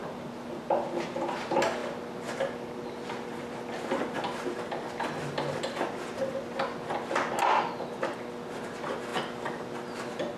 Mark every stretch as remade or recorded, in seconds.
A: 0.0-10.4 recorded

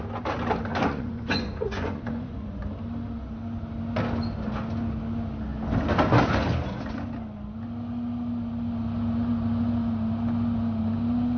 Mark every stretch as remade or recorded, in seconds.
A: 0.0-0.7 recorded; 0.7-2.6 remade; 2.6-11.4 recorded

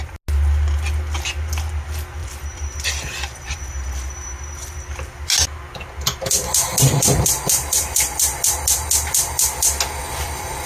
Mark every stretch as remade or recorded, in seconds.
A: 0.0-2.2 recorded; 2.2-2.9 remade; 2.9-10.0 recorded; 10.0-10.7 remade

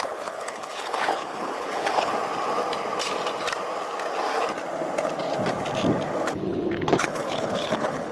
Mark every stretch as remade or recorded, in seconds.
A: 0.0-2.1 remade; 2.1-6.3 recorded; 6.3-8.1 remade